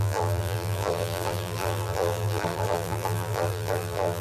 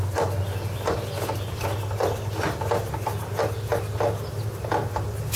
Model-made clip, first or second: first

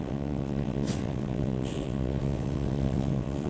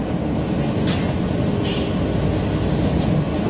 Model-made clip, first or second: first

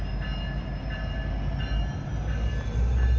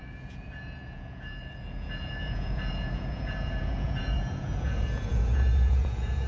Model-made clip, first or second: second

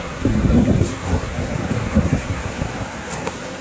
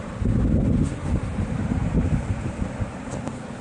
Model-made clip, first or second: first